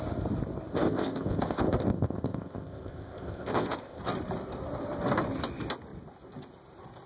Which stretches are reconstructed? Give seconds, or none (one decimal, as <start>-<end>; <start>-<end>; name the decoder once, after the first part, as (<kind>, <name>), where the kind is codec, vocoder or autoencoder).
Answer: 0.7-4.0 (codec, ZipCodec)

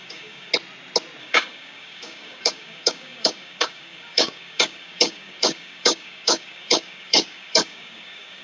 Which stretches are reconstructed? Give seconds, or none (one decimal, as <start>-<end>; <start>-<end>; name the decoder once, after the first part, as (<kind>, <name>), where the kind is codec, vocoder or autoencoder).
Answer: 0.0-0.5 (codec, DAC); 1.2-8.4

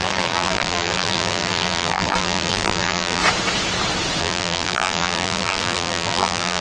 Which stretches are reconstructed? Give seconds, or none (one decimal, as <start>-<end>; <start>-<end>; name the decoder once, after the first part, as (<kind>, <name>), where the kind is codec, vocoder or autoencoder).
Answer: 0.0-3.2 (vocoder, BigVGAN v2); 4.2-6.6

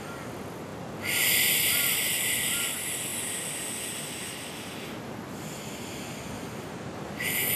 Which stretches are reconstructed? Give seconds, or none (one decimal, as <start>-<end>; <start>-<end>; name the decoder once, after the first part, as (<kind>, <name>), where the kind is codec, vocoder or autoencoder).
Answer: none

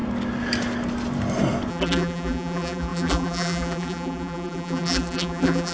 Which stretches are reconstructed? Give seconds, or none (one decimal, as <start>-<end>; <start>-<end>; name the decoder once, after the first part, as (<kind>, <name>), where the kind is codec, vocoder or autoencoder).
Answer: 1.7-5.7 (vocoder, BigVGAN v2)

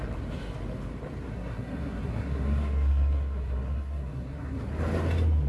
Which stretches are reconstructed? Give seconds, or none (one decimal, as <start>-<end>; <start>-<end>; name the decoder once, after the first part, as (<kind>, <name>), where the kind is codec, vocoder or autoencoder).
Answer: 1.3-4.6 (codec, SNAC)